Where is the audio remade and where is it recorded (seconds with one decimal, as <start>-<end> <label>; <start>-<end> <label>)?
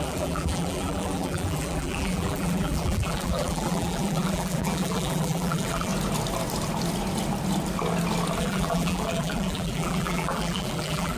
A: 0.0-5.9 remade; 5.9-8.4 recorded; 8.4-11.2 remade